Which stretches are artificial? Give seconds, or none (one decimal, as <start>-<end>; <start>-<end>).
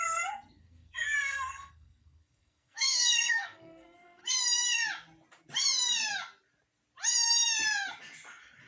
0.0-4.2